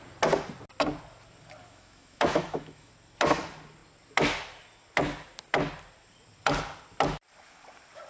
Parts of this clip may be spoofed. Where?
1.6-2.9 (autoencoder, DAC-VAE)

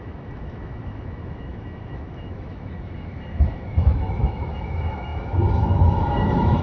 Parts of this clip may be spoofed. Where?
0.0-6.6 (autoencoder, DAC-VAE)

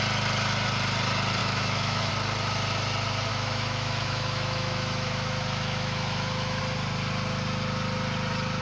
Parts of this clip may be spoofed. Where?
1.4-2.1 (autoencoder, DAC-VAE); 3.3-6.6

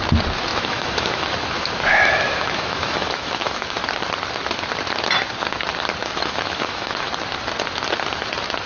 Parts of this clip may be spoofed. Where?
0.5-3.8 (autoencoder, DAC-VAE); 6.0-7.1

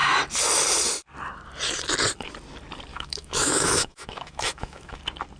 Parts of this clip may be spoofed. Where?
2.9-5.0 (autoencoder, DAC-VAE)